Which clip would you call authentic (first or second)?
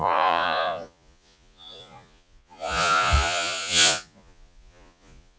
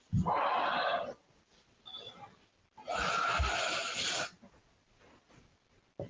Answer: second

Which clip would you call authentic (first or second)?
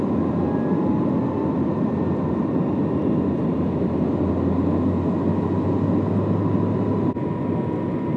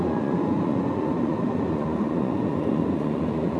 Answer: first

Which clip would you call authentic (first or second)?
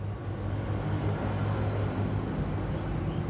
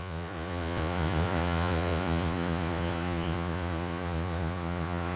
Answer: first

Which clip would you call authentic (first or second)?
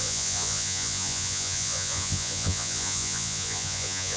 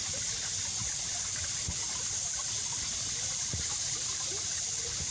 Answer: second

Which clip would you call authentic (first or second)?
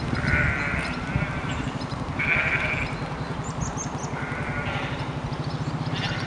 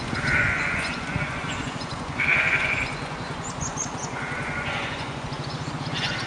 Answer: first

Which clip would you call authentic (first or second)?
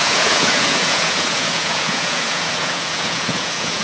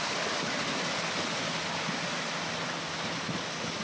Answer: second